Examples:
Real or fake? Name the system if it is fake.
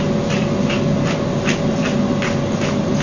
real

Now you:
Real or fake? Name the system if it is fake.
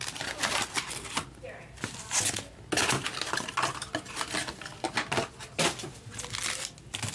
real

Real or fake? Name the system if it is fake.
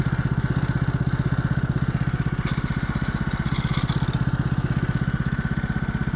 real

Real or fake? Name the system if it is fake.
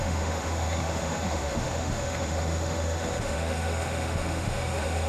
fake, autoencoder, DAC-VAE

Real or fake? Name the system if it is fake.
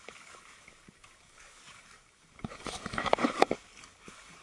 fake, codec, DAC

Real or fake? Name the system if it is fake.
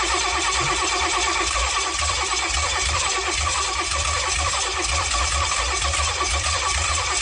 real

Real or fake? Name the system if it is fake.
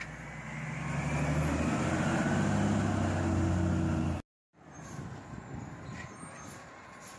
real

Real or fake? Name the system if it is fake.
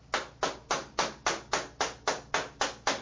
real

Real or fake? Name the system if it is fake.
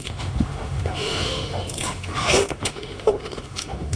fake, autoencoder, DAC-VAE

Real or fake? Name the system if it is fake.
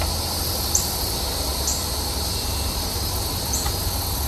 real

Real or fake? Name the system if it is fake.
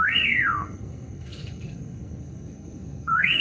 fake, codec, SNAC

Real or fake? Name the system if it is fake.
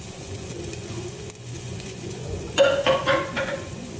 fake, vocoder, Vocos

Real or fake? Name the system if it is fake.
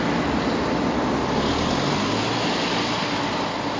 real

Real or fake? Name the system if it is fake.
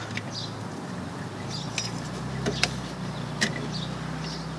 real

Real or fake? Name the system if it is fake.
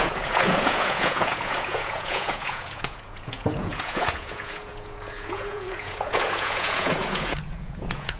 fake, vocoder, Vocos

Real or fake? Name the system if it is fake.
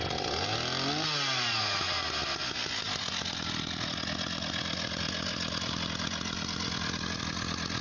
real